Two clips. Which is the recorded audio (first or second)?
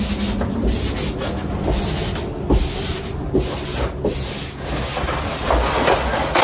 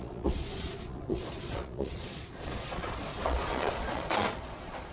first